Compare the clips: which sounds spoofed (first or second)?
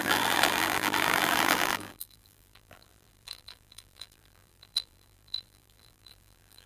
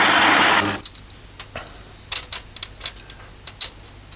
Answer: first